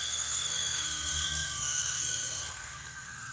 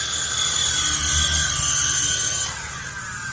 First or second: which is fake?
first